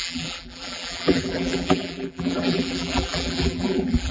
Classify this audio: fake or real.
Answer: fake